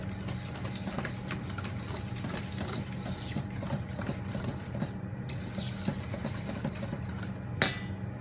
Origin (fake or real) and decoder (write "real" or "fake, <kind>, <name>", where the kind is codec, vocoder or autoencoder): real